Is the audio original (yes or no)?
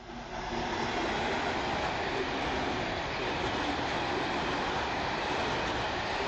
yes